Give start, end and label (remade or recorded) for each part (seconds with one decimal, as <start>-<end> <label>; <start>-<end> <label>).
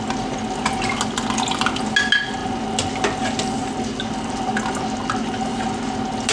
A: 0.0-6.3 recorded